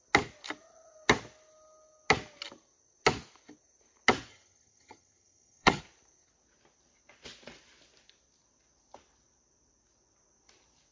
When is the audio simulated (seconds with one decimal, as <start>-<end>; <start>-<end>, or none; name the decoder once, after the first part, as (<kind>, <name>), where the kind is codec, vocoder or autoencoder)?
4.3-5.8 (vocoder, HiFi-GAN)